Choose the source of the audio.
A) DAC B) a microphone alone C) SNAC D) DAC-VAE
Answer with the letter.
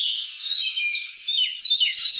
D